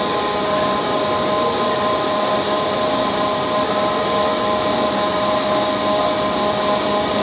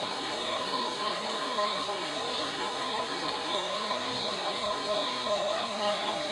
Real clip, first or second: first